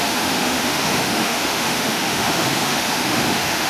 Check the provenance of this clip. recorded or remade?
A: remade